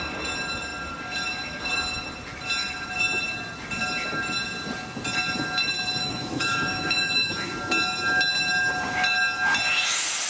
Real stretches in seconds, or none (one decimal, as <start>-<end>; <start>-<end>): 0.0-6.0; 7.5-10.3